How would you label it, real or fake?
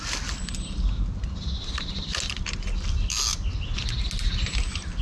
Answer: real